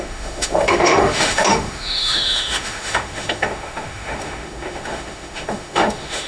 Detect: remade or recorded remade